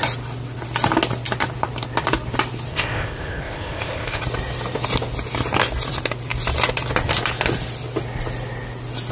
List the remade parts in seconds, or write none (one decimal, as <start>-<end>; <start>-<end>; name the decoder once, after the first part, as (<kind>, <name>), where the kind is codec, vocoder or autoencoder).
2.7-4.2 (codec, ZipCodec)